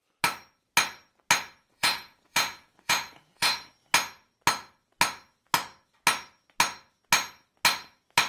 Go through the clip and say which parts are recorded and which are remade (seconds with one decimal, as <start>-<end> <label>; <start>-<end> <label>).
0.0-1.7 recorded; 1.7-3.7 remade; 3.7-8.3 recorded